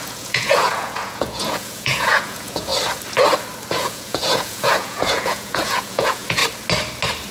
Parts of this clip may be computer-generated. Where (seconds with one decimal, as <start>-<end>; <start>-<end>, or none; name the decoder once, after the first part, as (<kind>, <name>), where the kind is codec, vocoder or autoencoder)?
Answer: 0.0-2.7 (vocoder, Vocos); 3.7-6.4